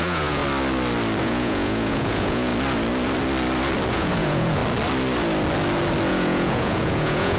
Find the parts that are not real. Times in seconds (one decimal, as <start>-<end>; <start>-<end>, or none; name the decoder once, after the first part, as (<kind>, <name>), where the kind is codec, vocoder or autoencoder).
0.0-0.4 (vocoder, Vocos); 1.2-2.5; 3.9-4.6; 6.1-7.4